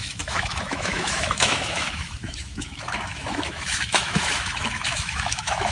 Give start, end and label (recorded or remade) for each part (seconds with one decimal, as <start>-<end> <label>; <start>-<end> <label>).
0.0-5.7 remade